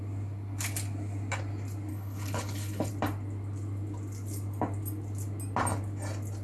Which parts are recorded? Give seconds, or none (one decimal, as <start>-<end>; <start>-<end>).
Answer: 0.0-1.9; 2.9-6.4